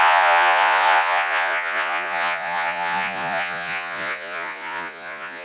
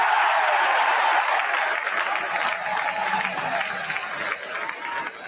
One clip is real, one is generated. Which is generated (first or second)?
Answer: first